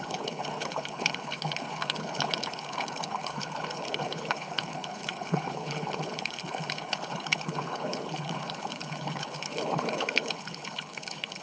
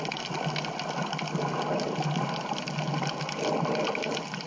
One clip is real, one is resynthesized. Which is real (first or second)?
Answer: second